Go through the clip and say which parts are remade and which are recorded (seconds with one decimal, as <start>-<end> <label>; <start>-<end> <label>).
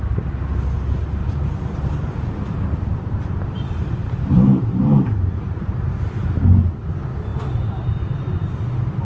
0.0-1.2 recorded; 1.2-5.9 remade; 5.9-7.3 recorded; 7.3-8.0 remade; 8.0-9.0 recorded